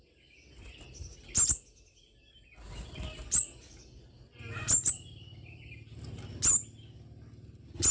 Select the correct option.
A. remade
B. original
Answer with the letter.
B